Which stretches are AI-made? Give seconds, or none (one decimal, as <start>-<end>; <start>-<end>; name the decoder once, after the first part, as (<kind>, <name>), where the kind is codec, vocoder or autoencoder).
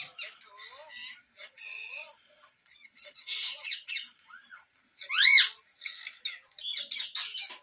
1.4-6.0 (vocoder, Vocos)